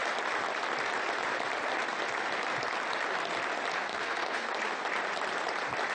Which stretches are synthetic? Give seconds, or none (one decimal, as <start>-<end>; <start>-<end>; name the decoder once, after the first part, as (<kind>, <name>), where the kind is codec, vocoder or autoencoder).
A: 3.9-4.5 (codec, SNAC)